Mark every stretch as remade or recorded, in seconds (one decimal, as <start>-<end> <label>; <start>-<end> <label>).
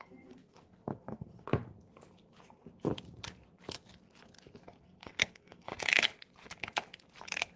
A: 0.0-1.5 remade; 1.5-4.8 recorded; 4.8-5.7 remade; 5.7-7.6 recorded